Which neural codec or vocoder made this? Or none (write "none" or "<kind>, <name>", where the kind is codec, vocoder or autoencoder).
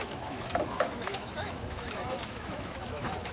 autoencoder, DAC-VAE